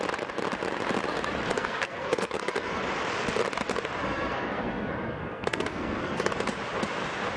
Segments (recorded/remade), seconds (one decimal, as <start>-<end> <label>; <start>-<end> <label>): 0.0-1.5 recorded; 1.5-2.8 remade; 2.8-4.0 recorded; 4.0-6.3 remade; 6.3-7.4 recorded